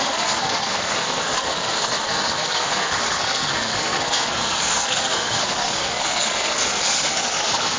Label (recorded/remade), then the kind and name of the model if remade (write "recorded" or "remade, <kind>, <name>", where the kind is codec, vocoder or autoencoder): remade, codec, SNAC